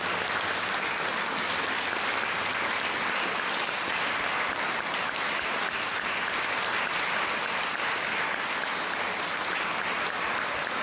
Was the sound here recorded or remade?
recorded